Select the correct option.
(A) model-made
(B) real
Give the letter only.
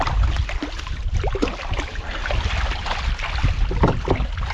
B